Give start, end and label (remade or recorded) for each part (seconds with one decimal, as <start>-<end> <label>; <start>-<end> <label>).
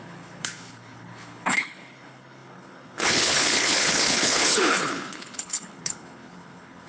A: 0.0-6.9 remade